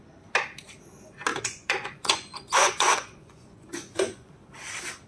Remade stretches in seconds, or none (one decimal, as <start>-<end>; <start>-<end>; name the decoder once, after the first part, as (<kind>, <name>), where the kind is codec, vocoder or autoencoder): 1.3-4.3 (vocoder, Vocos)